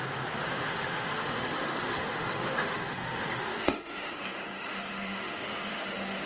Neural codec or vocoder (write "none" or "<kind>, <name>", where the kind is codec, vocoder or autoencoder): autoencoder, DAC-VAE